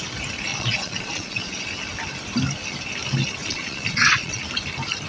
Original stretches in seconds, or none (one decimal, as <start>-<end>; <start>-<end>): 0.0-0.5; 1.6-3.4; 4.4-5.1